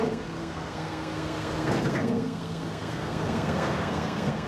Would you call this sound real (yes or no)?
no